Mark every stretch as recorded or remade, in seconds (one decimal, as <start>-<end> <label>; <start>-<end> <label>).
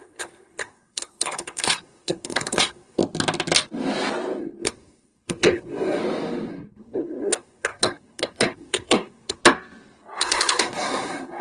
0.0-3.0 remade; 3.0-4.4 recorded; 4.4-6.0 remade; 6.0-6.5 recorded; 6.5-9.4 remade; 9.4-10.2 recorded; 10.2-11.4 remade